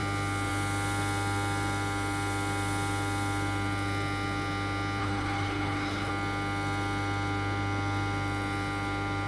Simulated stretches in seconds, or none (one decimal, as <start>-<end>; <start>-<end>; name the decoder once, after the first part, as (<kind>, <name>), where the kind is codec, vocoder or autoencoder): 5.0-6.1 (codec, HILCodec)